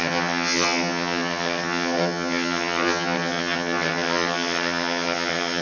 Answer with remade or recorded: remade